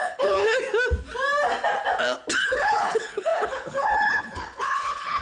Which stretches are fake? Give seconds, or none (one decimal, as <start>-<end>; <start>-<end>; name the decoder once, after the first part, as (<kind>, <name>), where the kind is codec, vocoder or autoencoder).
0.0-0.6 (codec, HILCodec); 2.4-5.2